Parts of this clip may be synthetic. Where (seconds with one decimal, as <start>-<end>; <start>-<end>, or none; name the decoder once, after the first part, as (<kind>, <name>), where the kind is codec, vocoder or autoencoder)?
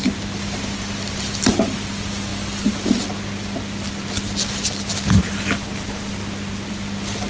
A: none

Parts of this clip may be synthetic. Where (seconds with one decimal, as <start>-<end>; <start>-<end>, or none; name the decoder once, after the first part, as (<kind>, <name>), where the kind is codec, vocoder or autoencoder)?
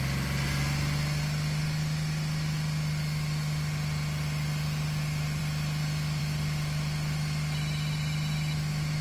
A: none